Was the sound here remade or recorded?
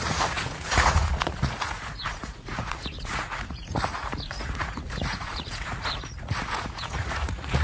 remade